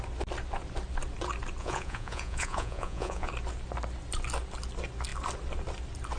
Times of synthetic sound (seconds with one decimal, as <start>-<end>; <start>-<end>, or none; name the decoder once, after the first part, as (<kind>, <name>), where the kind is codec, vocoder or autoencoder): 1.6-3.3 (vocoder, Vocos)